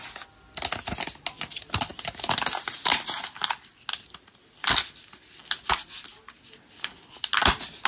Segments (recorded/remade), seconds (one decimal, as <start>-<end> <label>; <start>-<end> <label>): 0.0-7.9 recorded

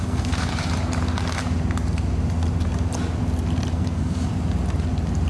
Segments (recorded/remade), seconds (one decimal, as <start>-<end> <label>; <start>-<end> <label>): 0.0-0.5 remade; 0.5-3.7 recorded; 3.7-4.3 remade; 4.3-5.3 recorded

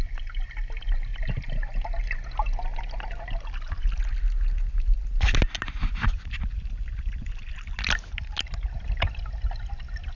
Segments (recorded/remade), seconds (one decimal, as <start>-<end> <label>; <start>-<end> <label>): 0.0-1.1 recorded; 1.1-1.9 remade; 1.9-6.5 recorded; 6.5-7.3 remade; 7.3-10.1 recorded

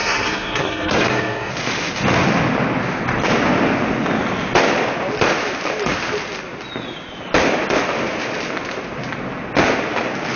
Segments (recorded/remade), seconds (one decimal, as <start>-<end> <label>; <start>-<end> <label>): 0.0-1.5 remade; 1.5-10.4 recorded

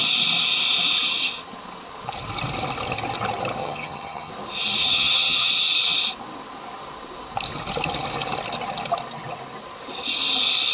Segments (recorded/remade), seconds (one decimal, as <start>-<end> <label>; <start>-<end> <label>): 0.0-3.6 recorded; 3.6-4.3 remade; 4.3-4.8 recorded; 4.8-5.5 remade; 5.5-10.7 recorded

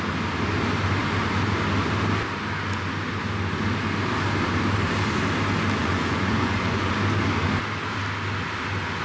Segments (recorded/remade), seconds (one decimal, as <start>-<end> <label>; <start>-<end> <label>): 0.0-5.8 recorded; 5.8-6.9 remade; 6.9-9.0 recorded